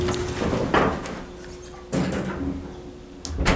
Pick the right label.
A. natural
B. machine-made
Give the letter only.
A